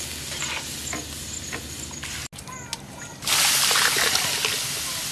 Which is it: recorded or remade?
recorded